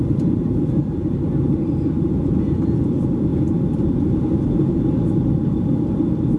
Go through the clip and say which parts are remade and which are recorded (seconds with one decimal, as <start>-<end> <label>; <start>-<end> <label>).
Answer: 0.0-6.4 remade